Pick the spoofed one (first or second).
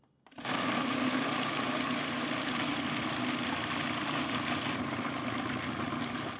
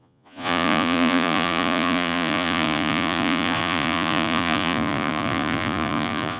second